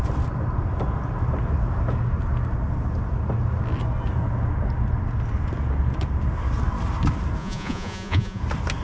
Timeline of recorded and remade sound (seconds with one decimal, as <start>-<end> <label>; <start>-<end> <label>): 0.0-7.4 recorded; 7.4-8.4 remade; 8.4-8.8 recorded